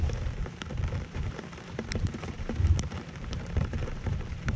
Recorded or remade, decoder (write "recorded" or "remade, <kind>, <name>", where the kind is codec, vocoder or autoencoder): remade, vocoder, BigVGAN v2